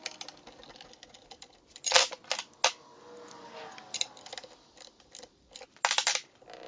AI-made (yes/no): no